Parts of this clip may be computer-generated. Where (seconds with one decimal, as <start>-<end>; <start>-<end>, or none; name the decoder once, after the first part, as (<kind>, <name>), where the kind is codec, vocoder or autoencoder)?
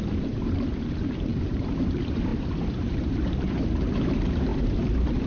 0.0-5.3 (vocoder, BigVGAN v2)